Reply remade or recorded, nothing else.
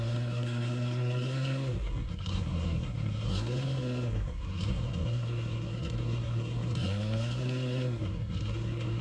remade